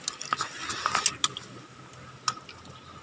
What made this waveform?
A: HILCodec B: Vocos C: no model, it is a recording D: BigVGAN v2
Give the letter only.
C